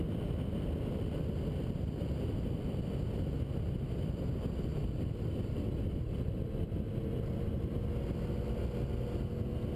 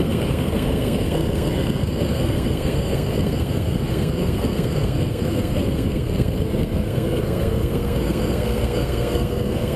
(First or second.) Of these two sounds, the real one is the first